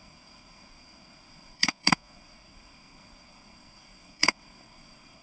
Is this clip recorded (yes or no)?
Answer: no